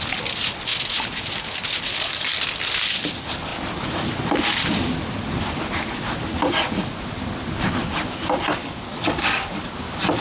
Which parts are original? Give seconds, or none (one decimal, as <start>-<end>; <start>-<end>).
0.0-1.9; 2.4-8.6; 9.6-10.2